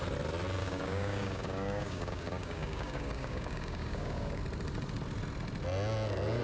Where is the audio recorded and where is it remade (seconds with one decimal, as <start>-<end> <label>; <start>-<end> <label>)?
0.0-0.6 recorded; 0.6-4.4 remade; 4.4-6.4 recorded